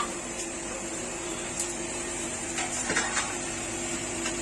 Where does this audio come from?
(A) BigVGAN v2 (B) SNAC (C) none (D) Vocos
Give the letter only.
A